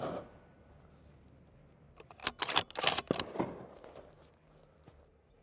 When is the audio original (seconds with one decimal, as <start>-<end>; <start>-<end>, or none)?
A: 0.0-5.4